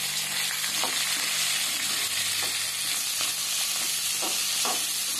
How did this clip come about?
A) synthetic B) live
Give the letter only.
B